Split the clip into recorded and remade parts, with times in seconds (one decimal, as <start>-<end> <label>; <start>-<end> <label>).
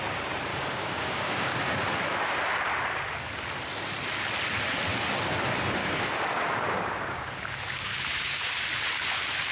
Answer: 0.0-0.5 recorded; 0.5-1.9 remade; 1.9-5.8 recorded; 5.8-8.6 remade; 8.6-9.5 recorded